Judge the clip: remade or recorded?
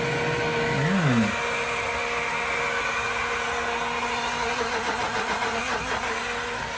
recorded